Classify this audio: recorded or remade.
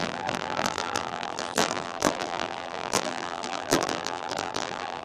remade